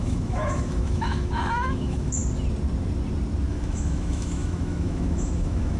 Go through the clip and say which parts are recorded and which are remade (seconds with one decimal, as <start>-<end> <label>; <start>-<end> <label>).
0.0-2.2 remade; 2.2-3.5 recorded; 3.5-5.8 remade